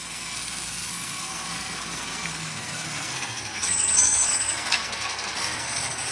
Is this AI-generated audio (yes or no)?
yes